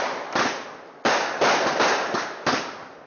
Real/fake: real